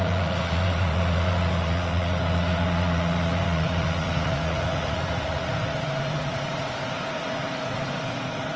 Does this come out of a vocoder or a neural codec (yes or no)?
yes